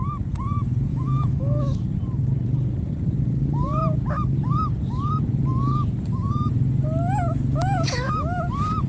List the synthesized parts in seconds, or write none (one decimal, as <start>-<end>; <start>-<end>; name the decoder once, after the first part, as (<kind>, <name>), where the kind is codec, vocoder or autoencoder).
0.9-1.8 (autoencoder, DAC-VAE); 7.6-8.4